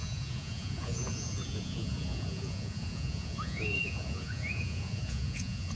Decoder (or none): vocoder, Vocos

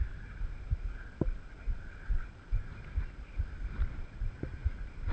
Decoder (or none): none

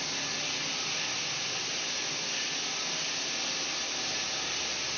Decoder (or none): none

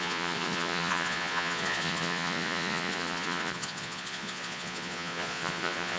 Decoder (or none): vocoder, Vocos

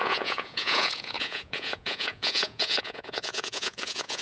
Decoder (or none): vocoder, Vocos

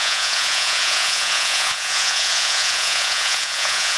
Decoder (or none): vocoder, Vocos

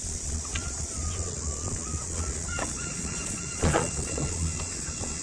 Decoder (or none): vocoder, Vocos